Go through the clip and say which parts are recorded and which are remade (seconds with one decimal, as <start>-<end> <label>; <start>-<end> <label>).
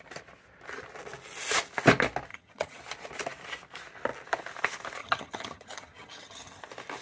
0.0-2.3 recorded; 2.3-2.8 remade; 2.8-5.0 recorded; 5.0-6.6 remade; 6.6-7.0 recorded